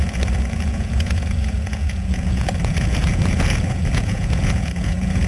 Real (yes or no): no